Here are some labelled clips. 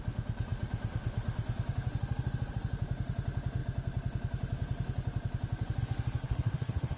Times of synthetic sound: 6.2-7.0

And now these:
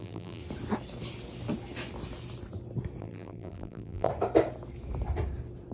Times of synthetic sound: 0.0-0.4; 3.0-4.1

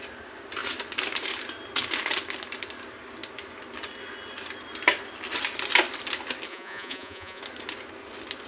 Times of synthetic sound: 6.5-7.4

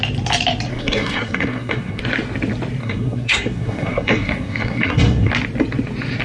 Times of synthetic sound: 0.7-2.0; 2.8-5.3